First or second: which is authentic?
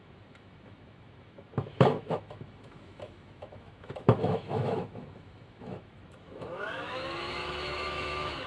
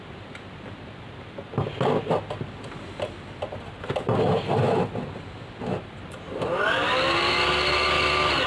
second